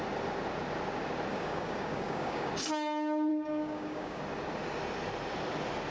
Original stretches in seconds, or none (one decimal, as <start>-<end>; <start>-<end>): 0.0-1.3; 2.5-3.3; 4.2-5.9